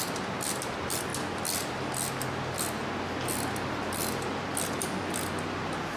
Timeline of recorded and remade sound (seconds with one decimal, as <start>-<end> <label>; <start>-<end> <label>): 0.0-6.0 recorded